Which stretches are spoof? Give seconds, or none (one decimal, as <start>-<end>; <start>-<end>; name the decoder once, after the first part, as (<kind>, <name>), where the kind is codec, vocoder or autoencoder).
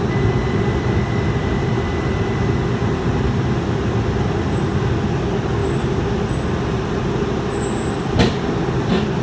none